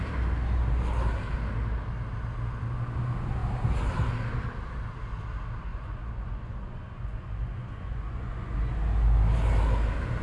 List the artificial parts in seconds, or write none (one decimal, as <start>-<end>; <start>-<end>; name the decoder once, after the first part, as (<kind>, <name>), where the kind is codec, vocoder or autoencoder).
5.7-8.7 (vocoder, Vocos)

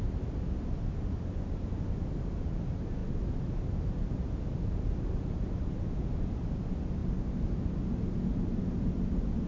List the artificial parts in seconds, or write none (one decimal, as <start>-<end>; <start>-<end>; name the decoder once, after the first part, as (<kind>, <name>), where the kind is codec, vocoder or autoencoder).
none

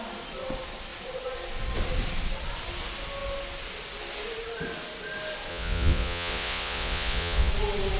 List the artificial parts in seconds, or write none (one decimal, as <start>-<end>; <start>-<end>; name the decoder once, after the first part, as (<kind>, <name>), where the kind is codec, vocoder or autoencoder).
5.5-7.5 (vocoder, Vocos)